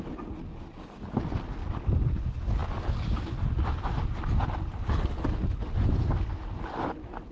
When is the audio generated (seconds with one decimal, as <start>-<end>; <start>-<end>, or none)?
none